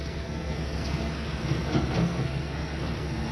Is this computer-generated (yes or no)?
yes